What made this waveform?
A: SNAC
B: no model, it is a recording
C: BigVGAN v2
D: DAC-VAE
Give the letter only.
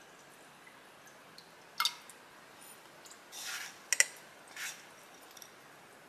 B